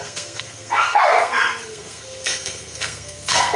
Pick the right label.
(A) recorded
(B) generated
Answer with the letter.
B